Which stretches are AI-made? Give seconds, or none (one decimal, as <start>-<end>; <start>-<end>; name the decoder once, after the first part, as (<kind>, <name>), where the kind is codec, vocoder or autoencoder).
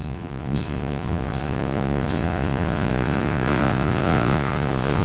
0.0-5.0 (vocoder, Vocos)